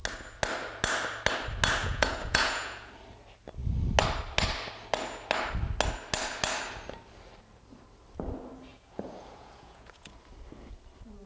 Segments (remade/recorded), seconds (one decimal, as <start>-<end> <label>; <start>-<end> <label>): 0.0-1.8 recorded; 1.8-2.9 remade; 2.9-8.7 recorded; 8.7-10.1 remade; 10.1-11.3 recorded